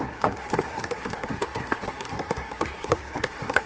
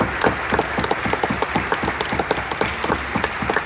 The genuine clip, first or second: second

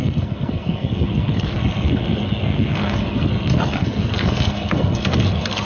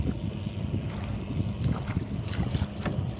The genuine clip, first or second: second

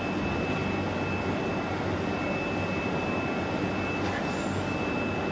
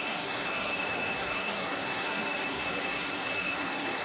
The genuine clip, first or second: first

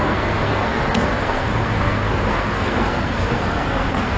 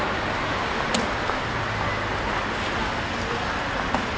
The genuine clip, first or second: second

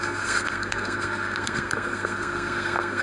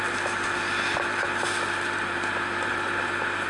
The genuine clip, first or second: second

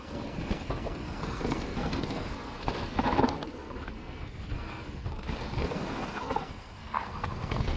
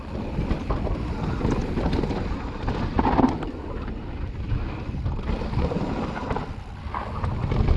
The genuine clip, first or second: second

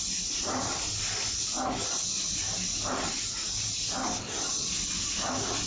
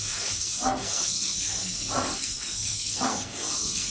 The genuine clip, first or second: first